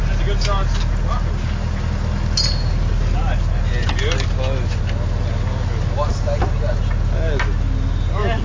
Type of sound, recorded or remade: recorded